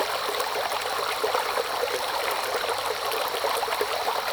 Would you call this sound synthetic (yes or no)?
no